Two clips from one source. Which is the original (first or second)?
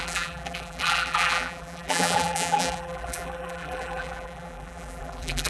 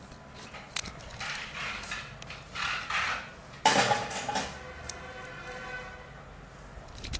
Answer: second